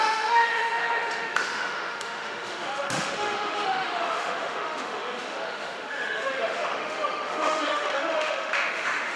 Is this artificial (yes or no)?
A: yes